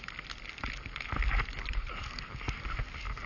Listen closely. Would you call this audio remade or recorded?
recorded